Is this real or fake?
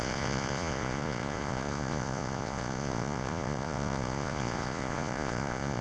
fake